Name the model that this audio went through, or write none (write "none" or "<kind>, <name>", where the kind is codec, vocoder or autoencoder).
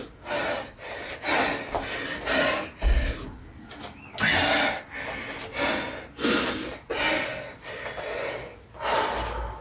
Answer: none